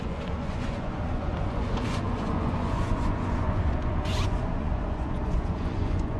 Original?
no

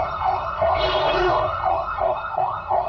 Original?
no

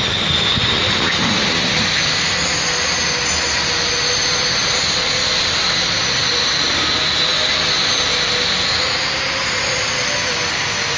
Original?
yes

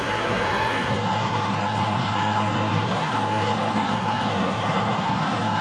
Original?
no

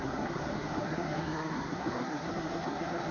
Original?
no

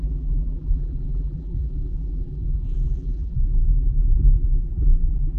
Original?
no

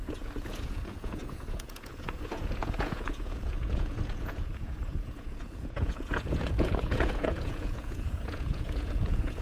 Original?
no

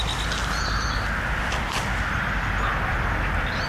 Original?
yes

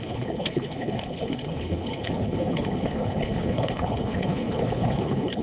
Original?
no